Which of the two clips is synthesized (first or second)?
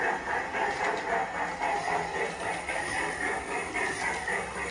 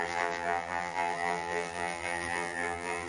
second